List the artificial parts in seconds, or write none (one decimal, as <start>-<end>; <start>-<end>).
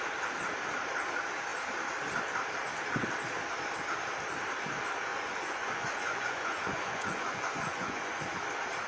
5.1-8.2